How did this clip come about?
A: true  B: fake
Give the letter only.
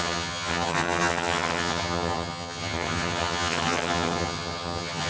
B